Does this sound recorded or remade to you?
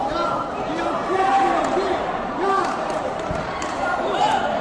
remade